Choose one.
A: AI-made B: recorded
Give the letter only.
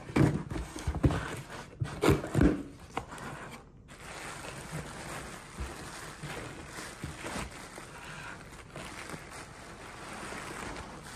B